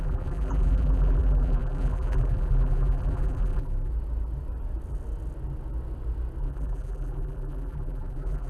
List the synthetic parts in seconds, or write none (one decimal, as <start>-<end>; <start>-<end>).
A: 0.0-3.9; 6.4-8.5